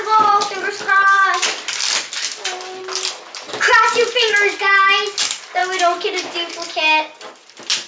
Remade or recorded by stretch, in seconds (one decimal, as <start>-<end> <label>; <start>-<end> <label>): 0.0-7.9 recorded